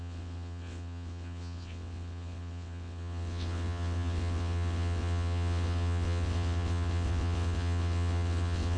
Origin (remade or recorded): remade